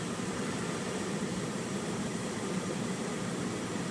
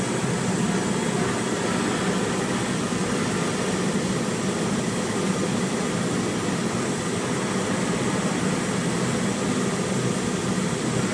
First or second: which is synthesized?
first